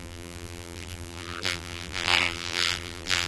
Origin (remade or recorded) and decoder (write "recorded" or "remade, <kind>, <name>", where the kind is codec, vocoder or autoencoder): remade, vocoder, BigVGAN v2